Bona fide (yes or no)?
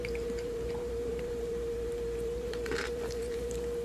no